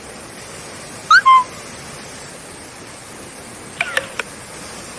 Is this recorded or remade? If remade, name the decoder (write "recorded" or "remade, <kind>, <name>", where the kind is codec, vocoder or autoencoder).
recorded